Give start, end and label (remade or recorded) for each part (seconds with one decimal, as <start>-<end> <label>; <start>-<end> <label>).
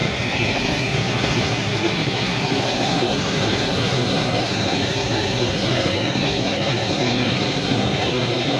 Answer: 0.0-8.6 remade